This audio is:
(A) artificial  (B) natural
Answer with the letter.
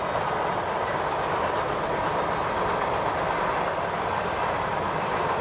B